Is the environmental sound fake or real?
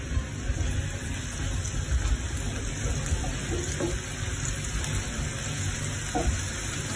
real